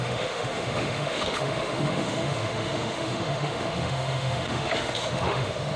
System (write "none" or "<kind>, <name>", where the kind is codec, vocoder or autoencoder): autoencoder, DAC-VAE